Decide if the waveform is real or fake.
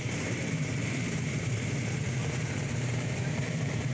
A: fake